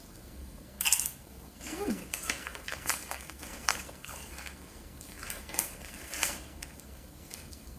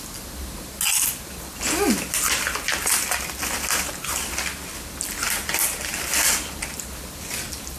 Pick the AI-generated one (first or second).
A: first